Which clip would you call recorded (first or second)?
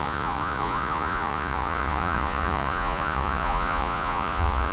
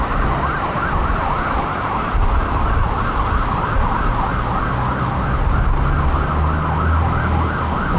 second